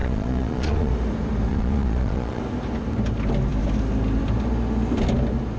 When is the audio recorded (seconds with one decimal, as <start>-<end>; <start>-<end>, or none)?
0.9-1.5; 2.4-5.6